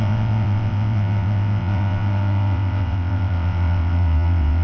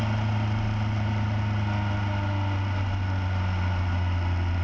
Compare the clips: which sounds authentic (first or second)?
second